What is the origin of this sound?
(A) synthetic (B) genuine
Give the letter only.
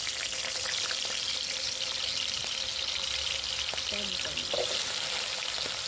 B